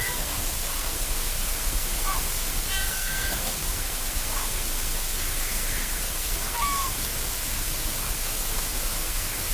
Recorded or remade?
remade